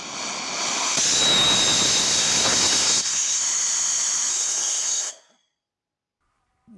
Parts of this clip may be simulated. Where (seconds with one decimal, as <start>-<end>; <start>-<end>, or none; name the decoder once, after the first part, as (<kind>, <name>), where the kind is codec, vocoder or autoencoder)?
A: 2.0-3.4 (codec, SNAC); 4.3-5.1